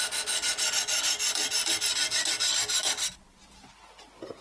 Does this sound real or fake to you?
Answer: real